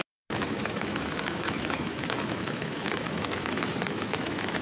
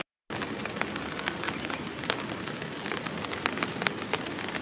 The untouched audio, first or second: second